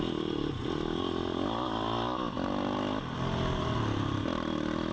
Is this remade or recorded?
recorded